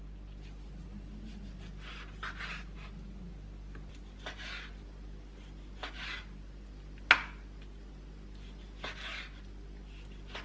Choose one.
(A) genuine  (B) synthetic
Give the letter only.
A